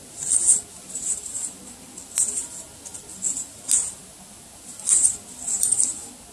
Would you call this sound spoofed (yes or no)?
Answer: no